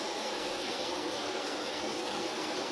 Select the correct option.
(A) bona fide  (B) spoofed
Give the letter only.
B